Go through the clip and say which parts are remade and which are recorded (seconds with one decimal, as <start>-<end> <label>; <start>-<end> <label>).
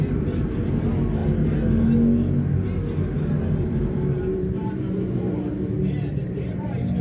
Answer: 0.0-1.2 remade; 1.2-3.6 recorded; 3.6-4.6 remade; 4.6-6.1 recorded; 6.1-7.0 remade